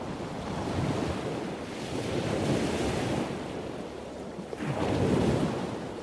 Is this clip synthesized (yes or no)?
no